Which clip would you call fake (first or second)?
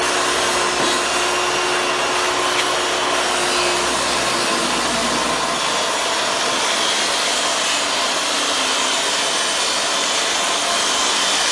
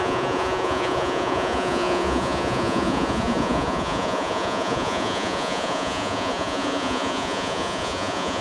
second